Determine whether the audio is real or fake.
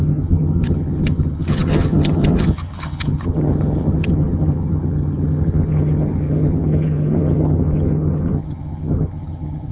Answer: fake